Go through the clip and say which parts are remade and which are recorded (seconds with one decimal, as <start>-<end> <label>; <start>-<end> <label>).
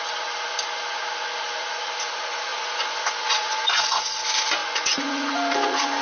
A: 0.0-2.5 recorded; 2.5-4.1 remade; 4.1-4.6 recorded; 4.6-6.0 remade